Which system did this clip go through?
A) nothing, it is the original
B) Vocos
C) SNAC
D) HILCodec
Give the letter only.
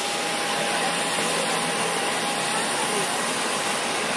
A